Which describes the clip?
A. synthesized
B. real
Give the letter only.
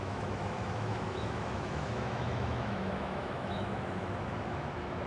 A